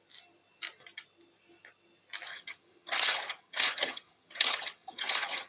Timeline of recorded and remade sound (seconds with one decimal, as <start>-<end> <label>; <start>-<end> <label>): 0.0-2.3 recorded; 2.3-5.5 remade